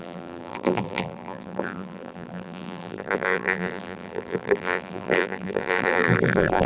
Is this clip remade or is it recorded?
remade